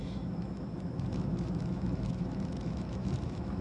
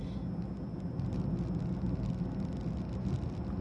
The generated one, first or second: first